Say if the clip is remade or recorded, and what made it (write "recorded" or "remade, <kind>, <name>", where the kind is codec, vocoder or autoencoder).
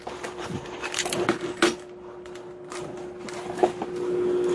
recorded